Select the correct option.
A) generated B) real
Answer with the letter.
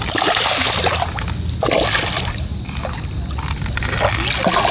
B